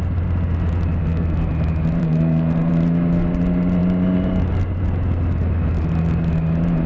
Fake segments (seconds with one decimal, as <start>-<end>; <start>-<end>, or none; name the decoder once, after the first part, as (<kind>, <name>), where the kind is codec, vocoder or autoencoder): 1.0-1.5 (codec, SNAC); 2.0-2.7

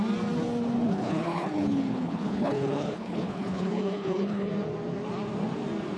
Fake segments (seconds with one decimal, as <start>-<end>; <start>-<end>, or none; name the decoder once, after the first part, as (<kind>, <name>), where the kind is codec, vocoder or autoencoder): 0.9-4.5 (codec, HILCodec)